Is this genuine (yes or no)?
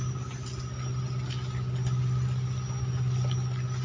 yes